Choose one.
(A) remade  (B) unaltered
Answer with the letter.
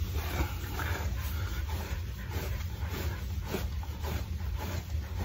A